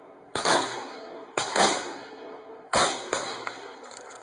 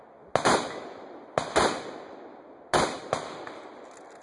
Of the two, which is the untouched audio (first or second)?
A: second